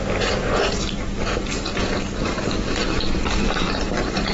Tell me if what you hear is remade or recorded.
recorded